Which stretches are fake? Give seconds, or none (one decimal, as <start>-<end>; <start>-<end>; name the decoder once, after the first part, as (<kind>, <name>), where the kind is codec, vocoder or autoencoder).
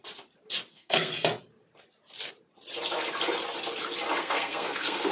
0.7-1.1 (codec, SNAC); 4.2-5.1